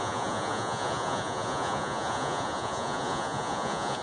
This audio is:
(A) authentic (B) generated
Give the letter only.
B